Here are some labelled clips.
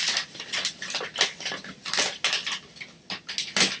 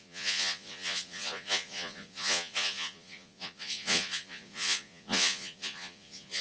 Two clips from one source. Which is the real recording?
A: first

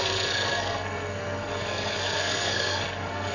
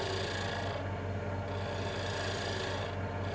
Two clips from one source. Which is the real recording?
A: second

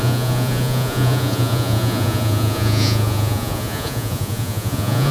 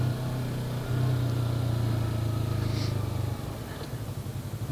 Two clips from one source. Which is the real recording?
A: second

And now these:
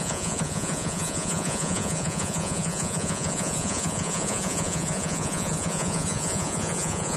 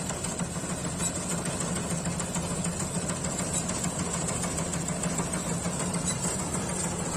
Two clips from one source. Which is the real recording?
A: second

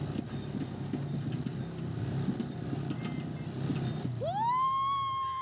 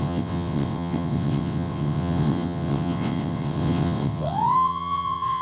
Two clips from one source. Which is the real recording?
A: first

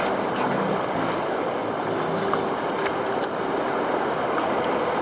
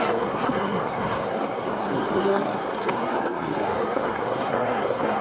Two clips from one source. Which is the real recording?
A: first